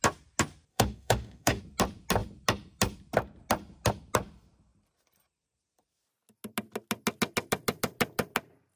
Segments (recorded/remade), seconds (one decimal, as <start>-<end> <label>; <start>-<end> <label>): 0.0-0.7 recorded; 0.7-1.6 remade; 1.6-8.8 recorded

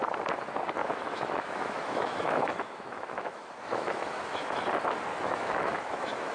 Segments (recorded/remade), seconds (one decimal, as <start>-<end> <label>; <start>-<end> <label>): 0.0-0.8 recorded; 0.8-4.6 remade; 4.6-5.1 recorded; 5.1-6.3 remade

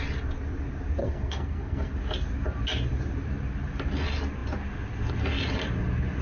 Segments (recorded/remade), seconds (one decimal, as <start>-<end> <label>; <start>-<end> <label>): 0.0-1.0 recorded; 1.0-1.9 remade; 1.9-6.2 recorded

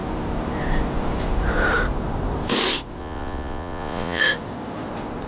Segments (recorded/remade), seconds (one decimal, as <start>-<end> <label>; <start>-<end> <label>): 0.0-3.0 recorded; 3.0-4.2 remade; 4.2-5.3 recorded

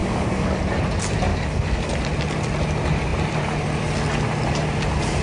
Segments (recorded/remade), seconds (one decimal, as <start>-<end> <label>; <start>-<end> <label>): 0.0-0.6 remade; 0.6-1.3 recorded; 1.3-1.9 remade; 1.9-5.2 recorded

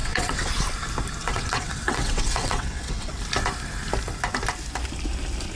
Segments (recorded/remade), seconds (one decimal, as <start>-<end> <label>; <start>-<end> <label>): 0.0-0.5 remade; 0.5-1.2 recorded; 1.2-3.1 remade; 3.1-5.6 recorded